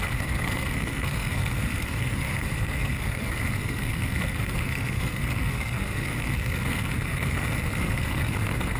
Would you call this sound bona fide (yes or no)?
no